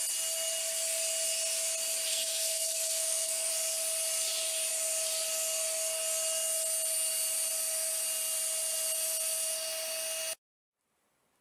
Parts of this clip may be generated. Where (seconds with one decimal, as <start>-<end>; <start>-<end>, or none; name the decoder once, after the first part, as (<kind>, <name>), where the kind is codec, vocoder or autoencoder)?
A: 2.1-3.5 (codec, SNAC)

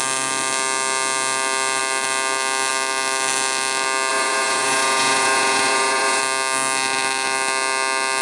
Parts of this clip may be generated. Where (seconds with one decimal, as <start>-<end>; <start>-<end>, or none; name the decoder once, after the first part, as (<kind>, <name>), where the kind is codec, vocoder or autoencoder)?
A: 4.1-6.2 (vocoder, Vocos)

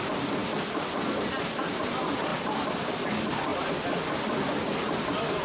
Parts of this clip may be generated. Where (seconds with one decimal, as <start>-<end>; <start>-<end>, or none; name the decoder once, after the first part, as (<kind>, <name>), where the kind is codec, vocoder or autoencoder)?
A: 0.4-1.3 (vocoder, BigVGAN v2); 2.3-2.9; 3.5-4.4

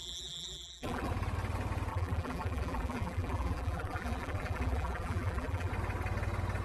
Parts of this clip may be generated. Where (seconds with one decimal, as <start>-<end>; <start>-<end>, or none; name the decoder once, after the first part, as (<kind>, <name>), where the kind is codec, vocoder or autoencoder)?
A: 0.0-1.1 (vocoder, BigVGAN v2); 1.9-5.7

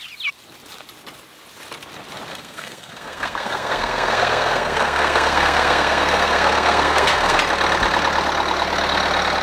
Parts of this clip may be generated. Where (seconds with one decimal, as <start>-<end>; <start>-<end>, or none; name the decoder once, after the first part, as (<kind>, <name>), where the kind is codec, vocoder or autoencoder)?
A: 2.3-7.4 (codec, SNAC)

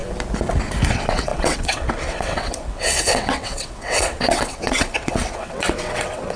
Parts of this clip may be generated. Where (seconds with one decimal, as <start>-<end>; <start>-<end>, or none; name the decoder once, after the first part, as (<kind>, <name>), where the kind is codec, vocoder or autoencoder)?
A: 0.9-6.4 (vocoder, WaveNeXt)

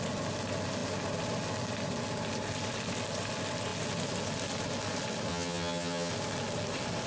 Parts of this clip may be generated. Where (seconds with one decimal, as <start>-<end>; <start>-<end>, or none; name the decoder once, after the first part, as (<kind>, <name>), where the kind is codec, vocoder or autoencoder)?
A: 5.3-6.1 (vocoder, HiFi-GAN)